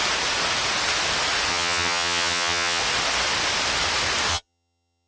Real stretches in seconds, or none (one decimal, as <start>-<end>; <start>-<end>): 0.0-1.5; 2.8-4.3